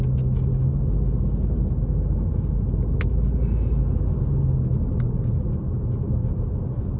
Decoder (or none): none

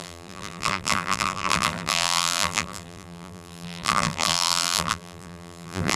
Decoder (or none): vocoder, BigVGAN v2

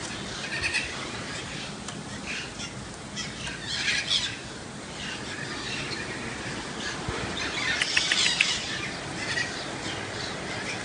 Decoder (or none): none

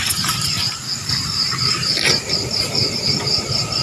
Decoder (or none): none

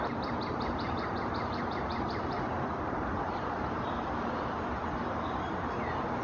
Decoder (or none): vocoder, BigVGAN v2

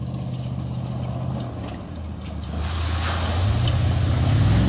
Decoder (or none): none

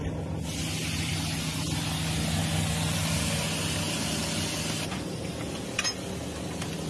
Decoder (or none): none